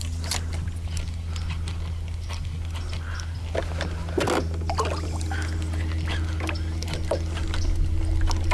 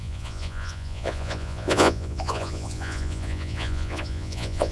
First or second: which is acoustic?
first